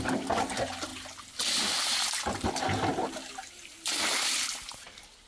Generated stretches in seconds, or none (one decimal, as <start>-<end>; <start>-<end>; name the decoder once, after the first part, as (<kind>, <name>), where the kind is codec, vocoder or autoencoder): none